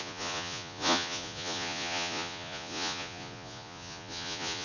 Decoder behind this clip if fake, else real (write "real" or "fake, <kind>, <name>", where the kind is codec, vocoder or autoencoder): fake, vocoder, Vocos